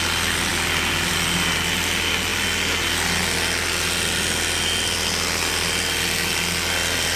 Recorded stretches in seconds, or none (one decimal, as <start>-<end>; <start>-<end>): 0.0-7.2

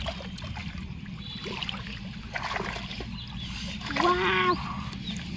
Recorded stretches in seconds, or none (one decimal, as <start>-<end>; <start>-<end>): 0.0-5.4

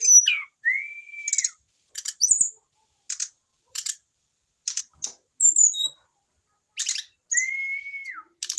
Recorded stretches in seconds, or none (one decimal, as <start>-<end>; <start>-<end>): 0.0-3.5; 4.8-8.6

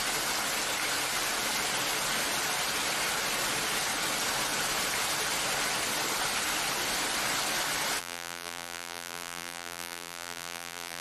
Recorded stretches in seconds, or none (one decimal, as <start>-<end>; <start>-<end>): 0.0-8.0

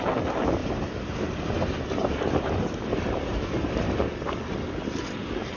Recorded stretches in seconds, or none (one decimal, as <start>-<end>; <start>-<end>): 0.0-0.6; 3.8-5.6

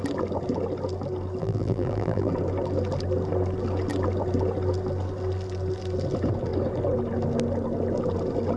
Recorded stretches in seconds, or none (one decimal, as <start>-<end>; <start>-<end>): 0.0-1.4; 2.3-8.6

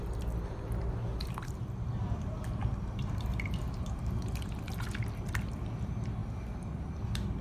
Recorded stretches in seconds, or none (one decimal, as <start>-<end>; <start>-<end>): 0.0-0.8; 4.7-7.4

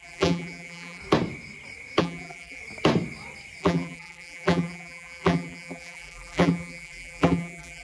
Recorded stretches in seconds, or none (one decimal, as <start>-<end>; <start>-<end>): 1.0-2.0; 2.6-3.6